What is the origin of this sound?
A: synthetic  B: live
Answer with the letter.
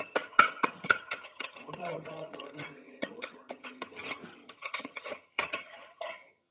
A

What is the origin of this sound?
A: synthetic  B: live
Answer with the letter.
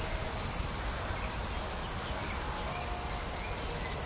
B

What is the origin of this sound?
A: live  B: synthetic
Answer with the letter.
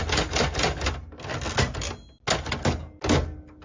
A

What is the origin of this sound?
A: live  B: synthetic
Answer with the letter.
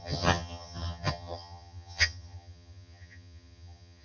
B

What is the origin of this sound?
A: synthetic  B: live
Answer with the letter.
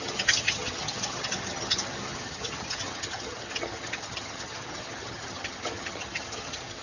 A